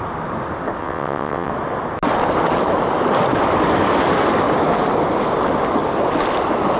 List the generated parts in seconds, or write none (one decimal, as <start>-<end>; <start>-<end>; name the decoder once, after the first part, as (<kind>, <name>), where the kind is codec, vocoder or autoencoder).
0.8-1.5 (vocoder, WaveNeXt)